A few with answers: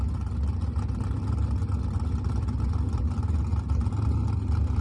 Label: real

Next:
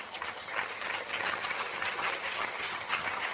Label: fake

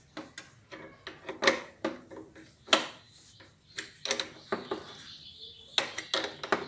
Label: real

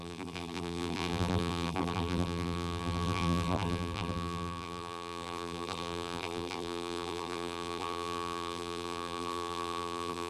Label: fake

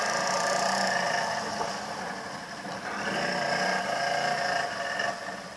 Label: real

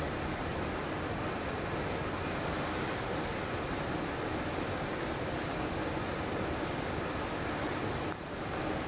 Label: real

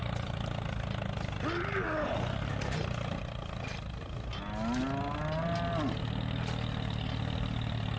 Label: real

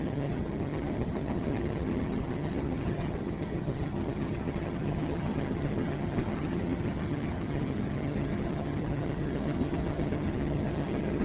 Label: fake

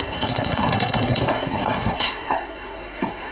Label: fake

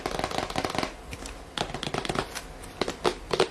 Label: real